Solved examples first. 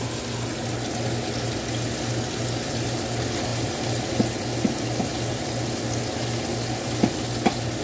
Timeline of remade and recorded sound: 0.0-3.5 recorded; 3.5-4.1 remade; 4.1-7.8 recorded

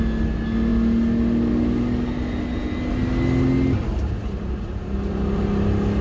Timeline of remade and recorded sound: 0.0-6.0 recorded

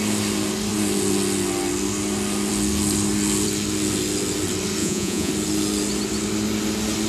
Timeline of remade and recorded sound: 0.0-4.8 recorded; 4.8-5.3 remade; 5.3-7.1 recorded

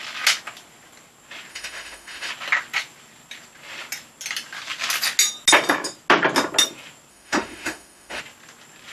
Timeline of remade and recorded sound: 0.0-1.5 recorded; 1.5-2.3 remade; 2.3-7.1 recorded; 7.1-8.2 remade; 8.2-8.9 recorded